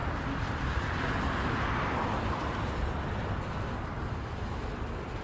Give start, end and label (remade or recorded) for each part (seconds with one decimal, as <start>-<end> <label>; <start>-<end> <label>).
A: 0.0-5.2 recorded